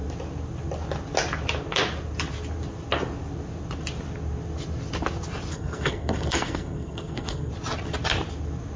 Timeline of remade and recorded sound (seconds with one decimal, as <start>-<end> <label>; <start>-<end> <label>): 0.0-5.5 recorded; 5.5-7.5 remade; 7.5-8.8 recorded